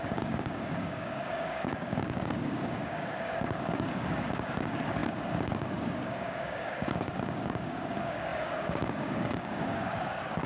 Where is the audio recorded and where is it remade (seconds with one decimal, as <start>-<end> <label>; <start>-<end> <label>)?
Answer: 0.0-10.5 remade